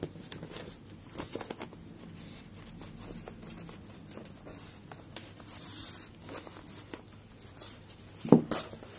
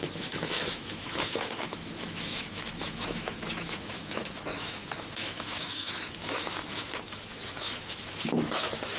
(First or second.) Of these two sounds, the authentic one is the first